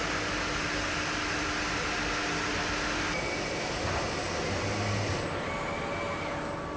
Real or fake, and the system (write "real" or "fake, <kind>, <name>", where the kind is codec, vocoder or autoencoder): real